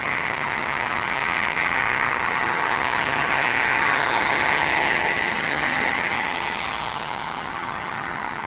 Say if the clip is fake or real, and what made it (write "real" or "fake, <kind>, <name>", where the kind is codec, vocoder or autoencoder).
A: fake, vocoder, HiFi-GAN